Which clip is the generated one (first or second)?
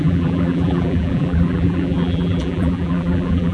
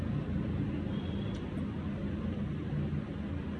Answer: first